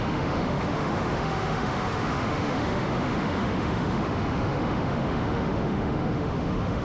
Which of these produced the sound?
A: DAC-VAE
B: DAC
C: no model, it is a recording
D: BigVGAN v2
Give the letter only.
A